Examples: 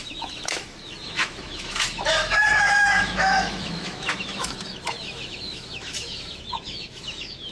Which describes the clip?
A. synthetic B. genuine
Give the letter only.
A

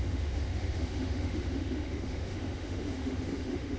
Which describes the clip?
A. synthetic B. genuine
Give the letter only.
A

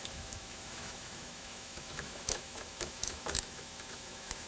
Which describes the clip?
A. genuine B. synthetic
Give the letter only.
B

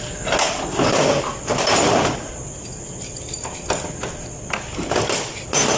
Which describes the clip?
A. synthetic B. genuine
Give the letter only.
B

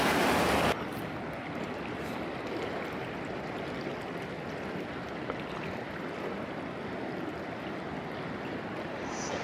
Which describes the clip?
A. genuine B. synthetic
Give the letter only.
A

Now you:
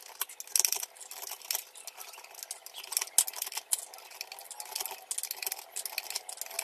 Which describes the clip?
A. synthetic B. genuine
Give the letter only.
B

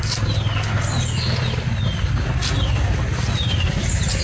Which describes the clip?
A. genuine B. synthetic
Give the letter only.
A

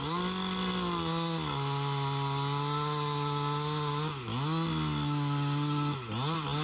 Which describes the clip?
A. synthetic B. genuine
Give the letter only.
B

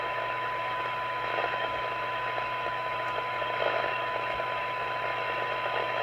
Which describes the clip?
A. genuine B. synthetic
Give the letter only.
B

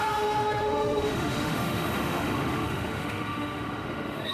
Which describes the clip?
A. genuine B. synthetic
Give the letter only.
B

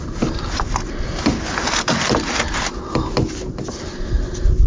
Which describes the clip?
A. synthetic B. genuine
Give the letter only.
B